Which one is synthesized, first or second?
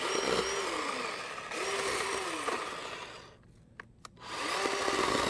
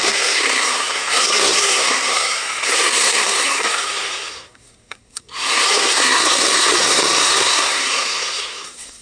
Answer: second